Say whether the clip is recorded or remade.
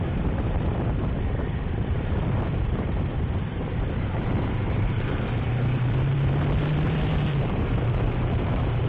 remade